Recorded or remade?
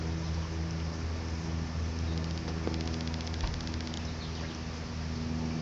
recorded